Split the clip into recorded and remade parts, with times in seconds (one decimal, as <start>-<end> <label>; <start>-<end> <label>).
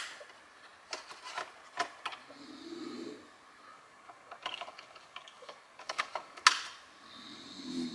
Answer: 0.0-3.7 recorded; 3.7-6.4 remade; 6.4-7.9 recorded